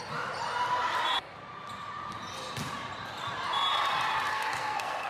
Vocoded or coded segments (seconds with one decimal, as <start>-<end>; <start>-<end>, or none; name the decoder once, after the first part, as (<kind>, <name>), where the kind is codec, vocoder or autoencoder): 4.3-5.1 (codec, SNAC)